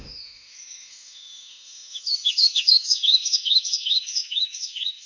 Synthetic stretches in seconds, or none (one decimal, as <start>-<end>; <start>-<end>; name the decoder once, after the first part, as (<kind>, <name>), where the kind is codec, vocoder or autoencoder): 0.0-5.1 (autoencoder, DAC-VAE)